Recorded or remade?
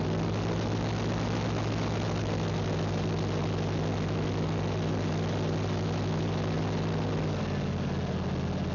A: recorded